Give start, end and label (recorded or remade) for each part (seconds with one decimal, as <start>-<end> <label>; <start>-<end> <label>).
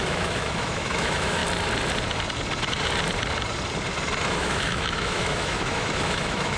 0.0-1.4 remade; 1.4-4.4 recorded; 4.4-6.6 remade